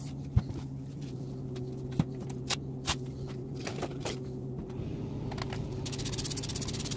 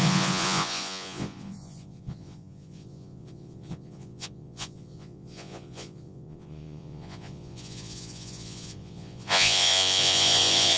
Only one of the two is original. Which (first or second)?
first